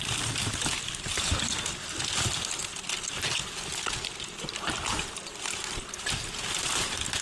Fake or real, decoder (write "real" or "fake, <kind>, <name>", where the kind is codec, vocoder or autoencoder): real